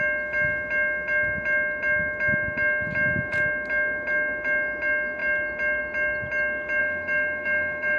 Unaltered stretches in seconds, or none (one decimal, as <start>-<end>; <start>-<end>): 0.0-6.8

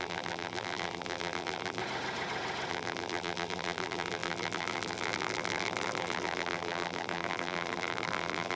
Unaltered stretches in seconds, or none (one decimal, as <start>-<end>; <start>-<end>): 1.8-2.7